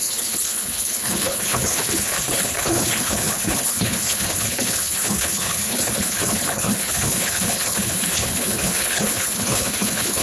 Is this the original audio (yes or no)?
no